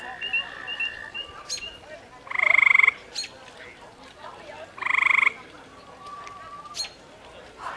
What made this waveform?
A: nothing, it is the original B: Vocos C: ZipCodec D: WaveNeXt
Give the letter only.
A